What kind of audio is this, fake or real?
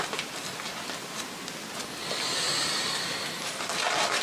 real